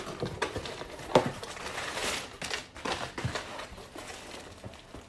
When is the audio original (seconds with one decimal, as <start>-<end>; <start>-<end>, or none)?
0.0-5.1

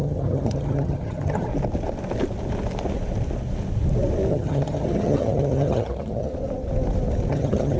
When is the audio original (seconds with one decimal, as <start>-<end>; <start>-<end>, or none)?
1.5-4.3; 6.3-7.3

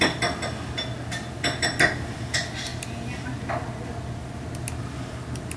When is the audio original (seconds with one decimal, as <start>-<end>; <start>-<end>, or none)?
0.0-5.6

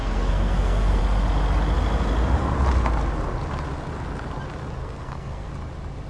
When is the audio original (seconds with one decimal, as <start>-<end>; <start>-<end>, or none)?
1.0-4.8; 5.5-6.1

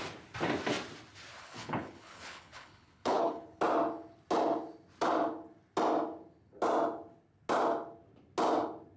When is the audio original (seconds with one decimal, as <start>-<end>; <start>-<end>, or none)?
0.0-1.3; 3.6-9.0

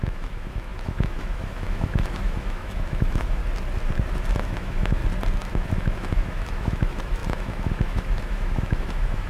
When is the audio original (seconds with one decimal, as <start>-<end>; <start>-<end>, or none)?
3.4-4.4; 5.0-5.5

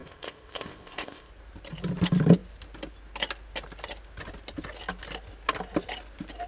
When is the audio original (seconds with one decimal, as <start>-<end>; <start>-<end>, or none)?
1.3-6.5

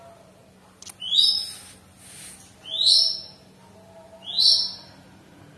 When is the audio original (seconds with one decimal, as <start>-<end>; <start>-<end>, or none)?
0.0-5.6